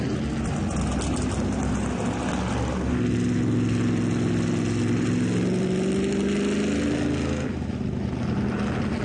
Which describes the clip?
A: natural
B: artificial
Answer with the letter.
A